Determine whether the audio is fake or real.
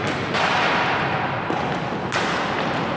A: real